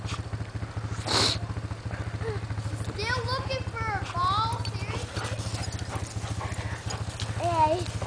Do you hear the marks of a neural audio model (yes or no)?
no